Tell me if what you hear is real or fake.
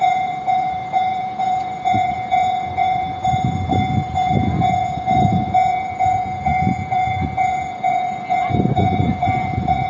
fake